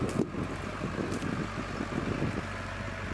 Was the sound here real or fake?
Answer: real